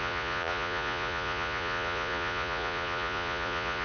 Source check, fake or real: fake